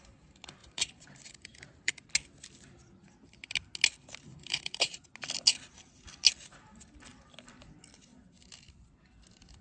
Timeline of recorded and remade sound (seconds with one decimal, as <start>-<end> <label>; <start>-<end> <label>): 0.0-0.6 recorded; 0.6-2.1 remade; 2.1-4.3 recorded; 4.3-5.0 remade; 5.0-9.6 recorded